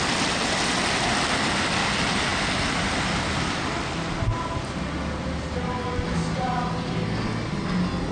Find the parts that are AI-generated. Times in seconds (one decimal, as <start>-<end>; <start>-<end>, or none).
none